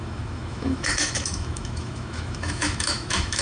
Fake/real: fake